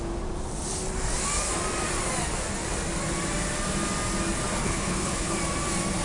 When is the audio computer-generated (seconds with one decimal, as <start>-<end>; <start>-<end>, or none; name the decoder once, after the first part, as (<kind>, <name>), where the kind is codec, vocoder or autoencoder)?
4.6-5.3 (codec, HILCodec)